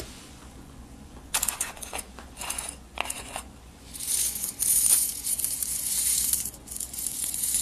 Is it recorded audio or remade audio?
remade